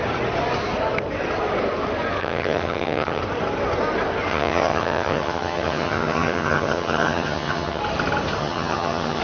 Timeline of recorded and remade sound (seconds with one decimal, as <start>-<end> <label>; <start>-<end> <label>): 0.0-2.2 recorded; 2.2-3.2 remade; 3.2-4.3 recorded; 4.3-7.8 remade; 7.8-8.4 recorded; 8.4-9.2 remade